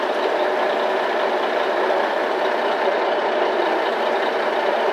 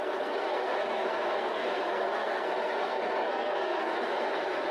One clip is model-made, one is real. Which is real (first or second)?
first